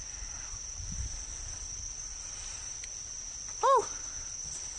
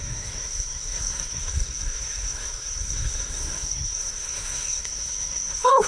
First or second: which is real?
first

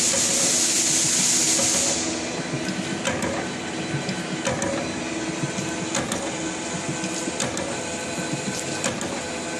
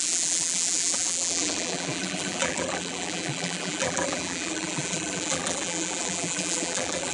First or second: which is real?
first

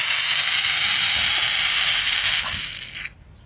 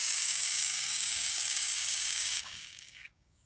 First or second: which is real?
first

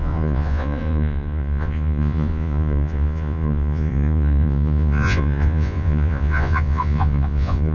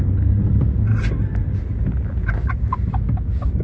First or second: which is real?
second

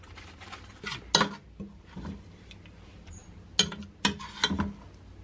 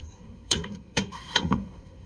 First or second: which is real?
first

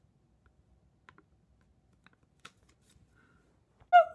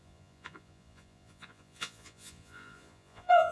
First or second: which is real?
first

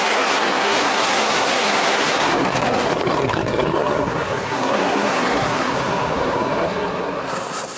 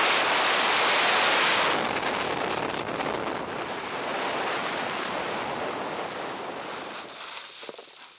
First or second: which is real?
second